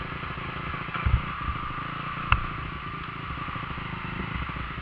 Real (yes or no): yes